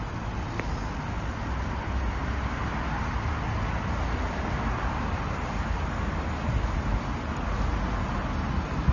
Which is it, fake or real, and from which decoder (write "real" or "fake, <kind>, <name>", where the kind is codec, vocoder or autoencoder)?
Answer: real